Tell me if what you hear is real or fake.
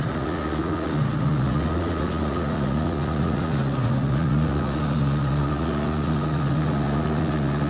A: fake